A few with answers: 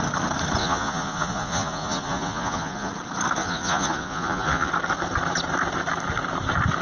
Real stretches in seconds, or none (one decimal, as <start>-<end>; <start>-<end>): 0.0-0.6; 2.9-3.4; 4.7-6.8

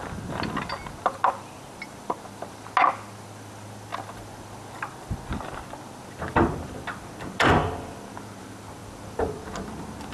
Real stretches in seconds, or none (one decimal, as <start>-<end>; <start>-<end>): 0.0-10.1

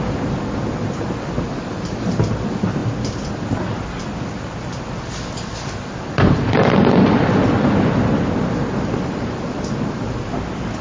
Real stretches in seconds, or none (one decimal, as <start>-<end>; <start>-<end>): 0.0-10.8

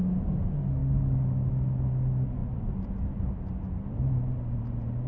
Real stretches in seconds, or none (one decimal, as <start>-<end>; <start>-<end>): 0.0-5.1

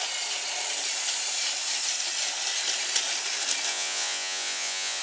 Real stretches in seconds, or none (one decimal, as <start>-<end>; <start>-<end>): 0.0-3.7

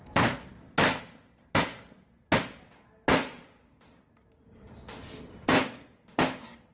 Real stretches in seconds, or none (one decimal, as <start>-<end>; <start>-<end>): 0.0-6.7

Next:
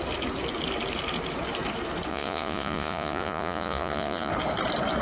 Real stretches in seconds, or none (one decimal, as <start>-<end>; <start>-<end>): 0.0-2.1; 4.3-5.0